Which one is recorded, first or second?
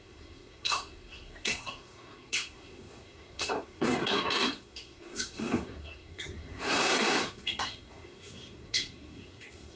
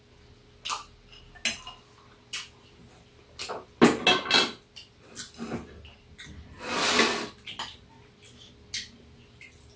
second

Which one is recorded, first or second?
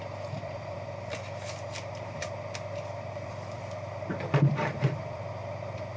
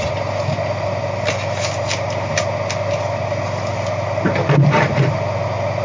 second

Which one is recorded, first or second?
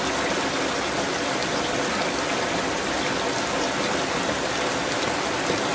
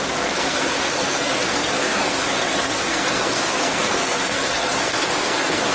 first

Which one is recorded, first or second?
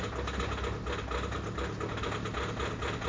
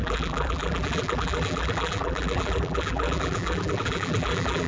first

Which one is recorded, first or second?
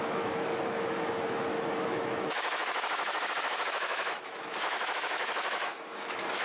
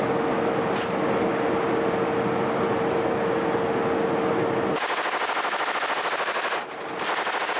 second